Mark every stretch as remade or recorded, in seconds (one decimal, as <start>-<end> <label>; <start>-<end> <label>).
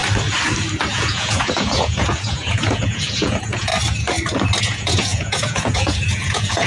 0.0-0.9 recorded; 0.9-3.7 remade; 3.7-4.6 recorded; 4.6-6.7 remade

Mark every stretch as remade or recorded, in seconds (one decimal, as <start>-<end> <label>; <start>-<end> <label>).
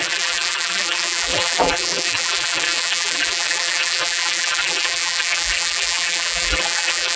0.0-7.2 remade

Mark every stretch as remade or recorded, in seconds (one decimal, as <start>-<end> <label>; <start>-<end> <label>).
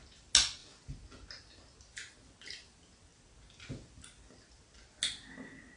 0.0-5.8 recorded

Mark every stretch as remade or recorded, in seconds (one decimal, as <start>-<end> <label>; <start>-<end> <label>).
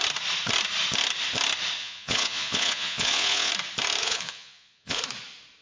0.0-1.8 recorded; 1.8-3.5 remade; 3.5-4.0 recorded; 4.0-5.0 remade; 5.0-5.6 recorded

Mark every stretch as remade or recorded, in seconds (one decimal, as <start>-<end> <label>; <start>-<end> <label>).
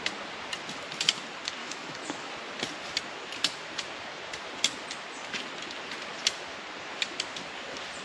0.0-1.6 recorded; 1.6-2.3 remade; 2.3-8.0 recorded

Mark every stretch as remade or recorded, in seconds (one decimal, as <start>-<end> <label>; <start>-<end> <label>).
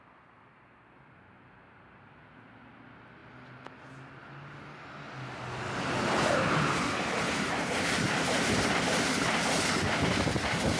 0.0-10.8 recorded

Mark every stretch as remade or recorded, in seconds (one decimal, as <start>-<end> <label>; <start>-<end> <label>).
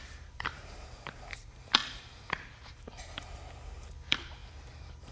0.0-5.1 remade